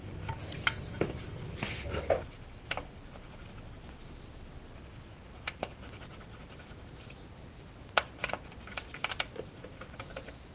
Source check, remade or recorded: recorded